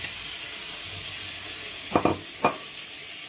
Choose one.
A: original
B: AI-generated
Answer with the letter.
A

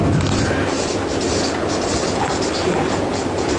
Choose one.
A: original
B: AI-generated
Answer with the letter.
A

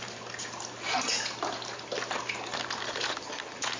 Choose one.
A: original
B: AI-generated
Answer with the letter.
A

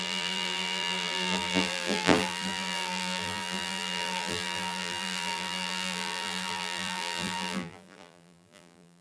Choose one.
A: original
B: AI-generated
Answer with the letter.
B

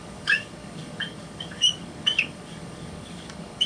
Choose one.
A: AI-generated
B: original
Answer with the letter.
A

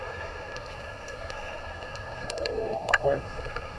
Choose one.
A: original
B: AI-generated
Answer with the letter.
B